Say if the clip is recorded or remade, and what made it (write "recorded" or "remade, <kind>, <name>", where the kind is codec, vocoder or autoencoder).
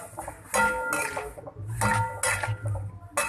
recorded